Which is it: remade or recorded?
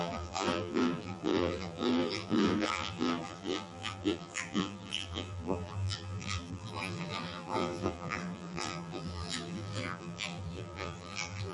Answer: remade